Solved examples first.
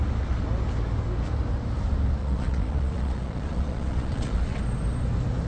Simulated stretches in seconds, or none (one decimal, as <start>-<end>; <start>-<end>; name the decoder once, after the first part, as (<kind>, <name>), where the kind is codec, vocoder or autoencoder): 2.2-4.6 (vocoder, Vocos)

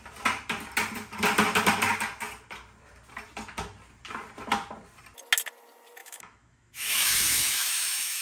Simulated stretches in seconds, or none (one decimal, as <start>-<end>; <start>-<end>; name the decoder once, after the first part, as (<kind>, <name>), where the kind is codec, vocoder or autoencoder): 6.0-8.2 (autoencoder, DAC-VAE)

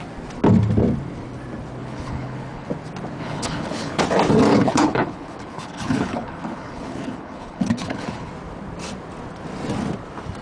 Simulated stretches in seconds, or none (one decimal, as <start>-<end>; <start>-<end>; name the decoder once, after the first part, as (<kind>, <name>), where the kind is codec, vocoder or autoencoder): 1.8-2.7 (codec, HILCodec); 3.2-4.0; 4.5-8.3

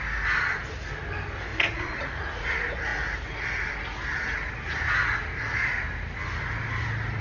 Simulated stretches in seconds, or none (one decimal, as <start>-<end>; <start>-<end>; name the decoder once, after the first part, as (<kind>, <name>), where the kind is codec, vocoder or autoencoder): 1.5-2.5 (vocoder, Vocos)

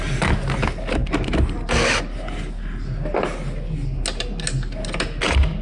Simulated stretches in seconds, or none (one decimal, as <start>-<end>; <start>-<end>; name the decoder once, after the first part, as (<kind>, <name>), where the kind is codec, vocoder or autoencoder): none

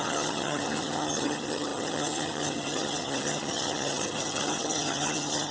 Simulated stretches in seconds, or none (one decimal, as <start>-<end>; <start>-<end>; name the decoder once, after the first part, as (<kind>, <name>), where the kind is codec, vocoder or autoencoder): 0.0-5.5 (vocoder, HiFi-GAN)

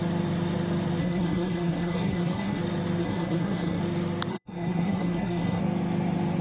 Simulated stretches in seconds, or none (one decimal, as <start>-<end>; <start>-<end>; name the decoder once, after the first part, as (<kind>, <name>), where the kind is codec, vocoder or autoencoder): 1.0-2.6 (codec, SNAC); 3.0-3.8; 4.3-5.6